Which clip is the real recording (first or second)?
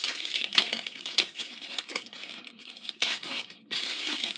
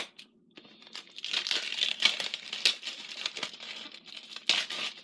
second